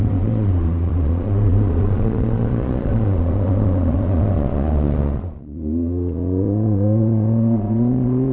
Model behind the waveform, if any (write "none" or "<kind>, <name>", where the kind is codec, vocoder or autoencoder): vocoder, Vocos